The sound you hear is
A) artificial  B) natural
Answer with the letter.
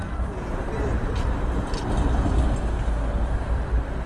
B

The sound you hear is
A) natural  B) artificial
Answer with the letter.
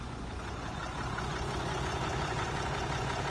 B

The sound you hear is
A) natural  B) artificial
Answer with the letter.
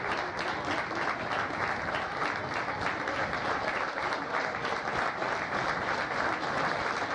A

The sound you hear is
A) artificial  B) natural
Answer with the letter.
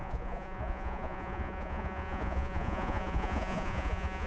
A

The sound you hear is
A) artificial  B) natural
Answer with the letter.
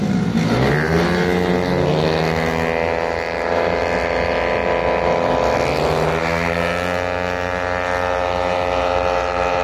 B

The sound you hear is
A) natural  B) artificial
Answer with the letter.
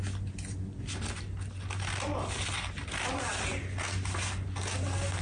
A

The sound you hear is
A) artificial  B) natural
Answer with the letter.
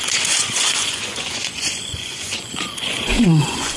A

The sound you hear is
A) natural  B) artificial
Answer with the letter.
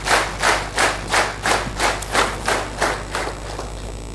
A